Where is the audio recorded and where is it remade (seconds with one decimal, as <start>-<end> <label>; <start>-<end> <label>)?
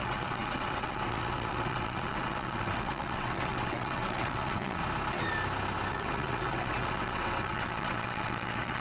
0.0-4.8 remade; 4.8-5.9 recorded; 5.9-8.8 remade